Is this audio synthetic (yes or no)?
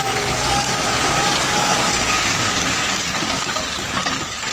yes